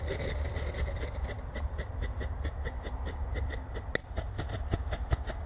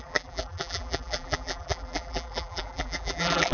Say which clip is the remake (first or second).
second